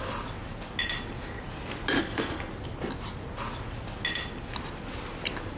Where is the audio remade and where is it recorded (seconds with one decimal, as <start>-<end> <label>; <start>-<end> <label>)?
0.0-2.0 recorded; 2.0-2.5 remade; 2.5-5.6 recorded